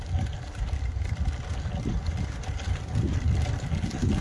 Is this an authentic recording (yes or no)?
yes